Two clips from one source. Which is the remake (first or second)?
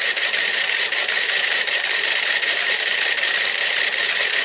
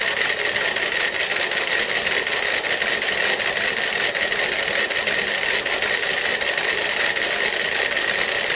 first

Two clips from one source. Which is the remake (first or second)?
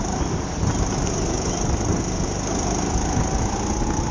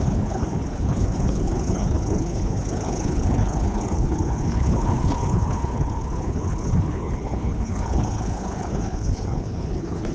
second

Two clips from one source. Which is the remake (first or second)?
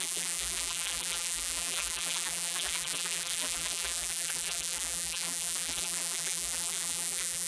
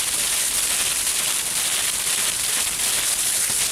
first